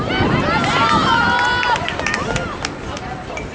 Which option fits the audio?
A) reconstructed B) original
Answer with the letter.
B